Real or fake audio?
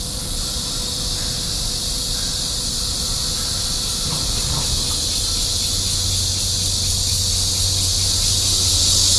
real